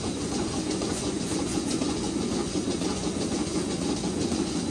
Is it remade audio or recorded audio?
remade